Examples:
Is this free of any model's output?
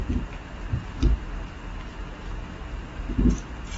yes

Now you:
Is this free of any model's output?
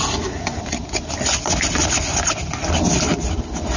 yes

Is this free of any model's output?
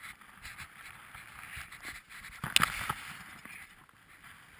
yes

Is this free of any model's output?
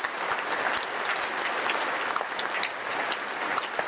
yes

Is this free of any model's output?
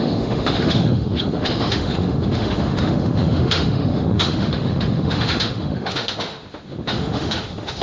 no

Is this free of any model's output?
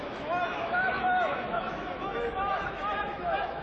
no